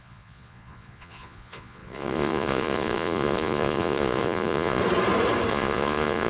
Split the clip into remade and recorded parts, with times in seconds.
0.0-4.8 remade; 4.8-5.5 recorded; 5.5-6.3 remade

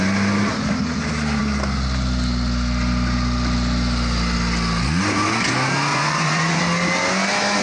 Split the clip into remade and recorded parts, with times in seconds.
0.0-5.9 recorded; 5.9-6.6 remade; 6.6-7.6 recorded

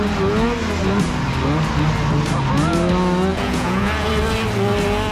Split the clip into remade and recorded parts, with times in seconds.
0.0-3.3 recorded; 3.3-4.1 remade; 4.1-5.1 recorded